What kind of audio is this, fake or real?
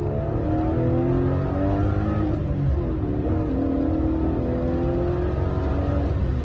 real